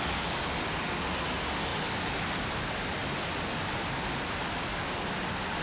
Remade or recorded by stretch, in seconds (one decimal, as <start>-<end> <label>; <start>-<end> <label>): 0.0-5.6 recorded